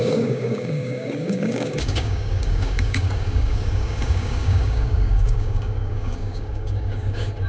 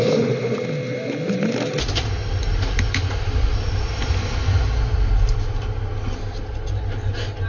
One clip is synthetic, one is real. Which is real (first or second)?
second